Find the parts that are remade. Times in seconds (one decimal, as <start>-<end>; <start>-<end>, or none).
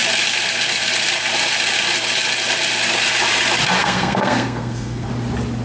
3.8-5.1